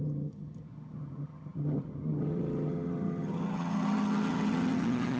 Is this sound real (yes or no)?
no